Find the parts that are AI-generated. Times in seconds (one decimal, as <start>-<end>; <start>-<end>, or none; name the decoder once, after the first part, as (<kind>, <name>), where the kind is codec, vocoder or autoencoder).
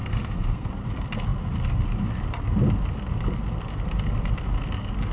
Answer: 0.0-0.7 (codec, SNAC)